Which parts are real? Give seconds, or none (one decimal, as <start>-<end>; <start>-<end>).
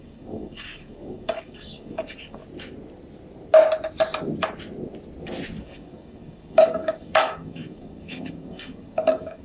2.4-5.6